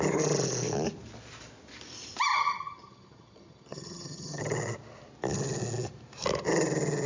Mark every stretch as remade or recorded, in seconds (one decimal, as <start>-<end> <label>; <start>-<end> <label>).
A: 0.0-2.3 recorded; 2.3-4.4 remade; 4.4-7.1 recorded